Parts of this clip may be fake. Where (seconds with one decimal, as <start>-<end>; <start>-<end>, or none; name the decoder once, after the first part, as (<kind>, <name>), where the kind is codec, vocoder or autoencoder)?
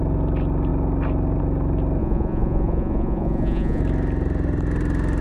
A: 2.0-3.8 (vocoder, Vocos)